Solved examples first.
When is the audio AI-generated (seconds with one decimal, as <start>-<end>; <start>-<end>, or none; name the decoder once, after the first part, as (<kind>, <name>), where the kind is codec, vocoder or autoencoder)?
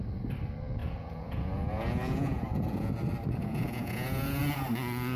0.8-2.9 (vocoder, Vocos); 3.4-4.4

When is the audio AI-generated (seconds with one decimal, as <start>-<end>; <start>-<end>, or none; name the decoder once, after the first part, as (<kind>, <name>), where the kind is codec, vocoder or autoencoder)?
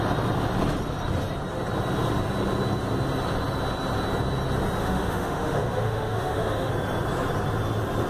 4.8-6.7 (autoencoder, DAC-VAE)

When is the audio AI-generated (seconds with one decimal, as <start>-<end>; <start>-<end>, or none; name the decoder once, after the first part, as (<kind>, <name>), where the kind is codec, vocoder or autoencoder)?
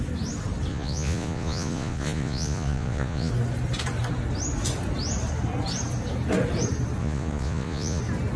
0.7-3.3 (vocoder, Vocos); 7.0-8.0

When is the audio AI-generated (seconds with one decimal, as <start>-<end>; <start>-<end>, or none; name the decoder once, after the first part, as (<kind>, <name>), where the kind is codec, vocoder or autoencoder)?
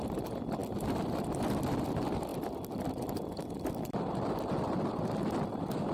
2.3-4.5 (vocoder, BigVGAN v2)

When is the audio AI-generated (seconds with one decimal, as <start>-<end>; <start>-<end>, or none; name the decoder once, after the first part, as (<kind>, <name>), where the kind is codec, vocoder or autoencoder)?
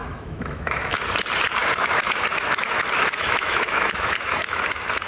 0.0-1.0 (autoencoder, DAC-VAE); 1.6-5.1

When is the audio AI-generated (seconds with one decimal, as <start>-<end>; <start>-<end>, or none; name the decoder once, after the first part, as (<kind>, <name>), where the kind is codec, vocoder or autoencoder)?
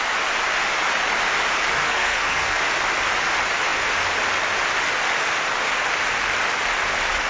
1.7-2.6 (codec, SNAC)